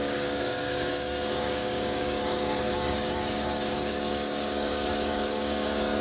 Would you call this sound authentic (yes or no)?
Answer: no